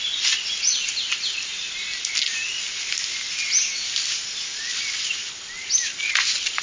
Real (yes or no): yes